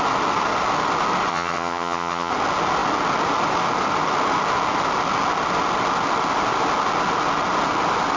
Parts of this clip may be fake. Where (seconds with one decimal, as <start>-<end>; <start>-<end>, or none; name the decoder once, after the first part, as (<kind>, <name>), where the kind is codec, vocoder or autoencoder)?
1.3-2.3 (vocoder, HiFi-GAN)